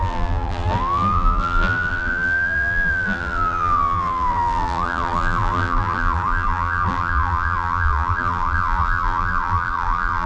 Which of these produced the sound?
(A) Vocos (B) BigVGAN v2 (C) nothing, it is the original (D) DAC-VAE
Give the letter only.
B